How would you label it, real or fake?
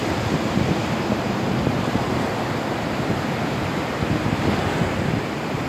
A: real